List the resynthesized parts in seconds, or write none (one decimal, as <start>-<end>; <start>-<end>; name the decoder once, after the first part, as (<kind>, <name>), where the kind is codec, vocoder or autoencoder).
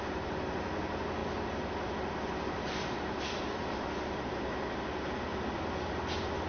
1.2-3.6 (vocoder, BigVGAN v2); 5.3-5.9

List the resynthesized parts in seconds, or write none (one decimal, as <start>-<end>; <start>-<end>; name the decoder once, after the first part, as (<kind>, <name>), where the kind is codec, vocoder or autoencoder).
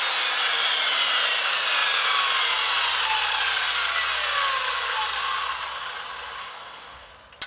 6.4-7.1 (codec, DAC)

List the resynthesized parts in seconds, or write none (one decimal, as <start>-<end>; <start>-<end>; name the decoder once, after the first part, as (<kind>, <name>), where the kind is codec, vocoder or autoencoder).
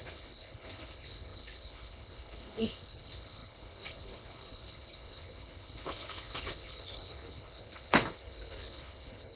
0.0-9.4 (codec, HILCodec)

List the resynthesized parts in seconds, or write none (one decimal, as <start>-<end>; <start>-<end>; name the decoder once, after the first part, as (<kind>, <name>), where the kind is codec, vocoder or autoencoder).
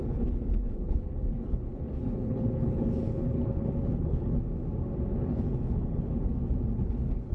0.0-4.4 (codec, HILCodec); 5.2-6.2; 6.7-7.3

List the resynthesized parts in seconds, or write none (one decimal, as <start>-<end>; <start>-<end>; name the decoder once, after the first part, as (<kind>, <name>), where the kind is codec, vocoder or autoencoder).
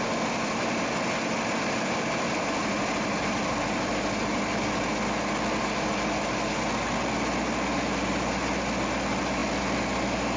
none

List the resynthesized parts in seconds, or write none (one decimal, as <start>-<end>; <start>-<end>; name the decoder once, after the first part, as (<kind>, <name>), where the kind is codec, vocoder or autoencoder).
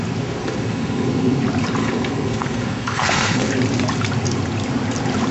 0.4-1.4 (codec, SNAC); 1.8-3.5